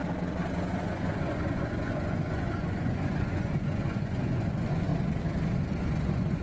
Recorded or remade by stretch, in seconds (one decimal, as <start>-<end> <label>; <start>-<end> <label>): 0.0-0.7 recorded; 0.7-4.9 remade; 4.9-5.8 recorded; 5.8-6.4 remade

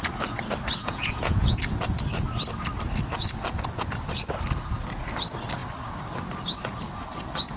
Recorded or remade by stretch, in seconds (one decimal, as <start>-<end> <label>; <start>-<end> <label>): 0.0-0.8 recorded; 0.8-1.6 remade; 1.6-7.6 recorded

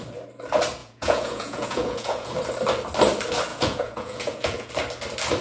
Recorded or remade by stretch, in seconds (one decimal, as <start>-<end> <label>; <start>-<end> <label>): 0.0-0.8 recorded; 0.8-2.3 remade; 2.3-3.5 recorded; 3.5-4.7 remade; 4.7-5.4 recorded

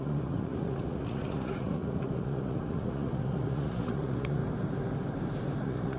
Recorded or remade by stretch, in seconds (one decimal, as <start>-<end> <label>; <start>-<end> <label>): 0.0-4.4 remade; 4.4-5.6 recorded; 5.6-6.0 remade

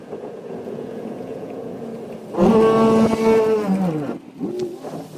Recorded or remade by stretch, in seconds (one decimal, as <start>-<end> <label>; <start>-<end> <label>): 0.0-1.9 remade; 1.9-5.2 recorded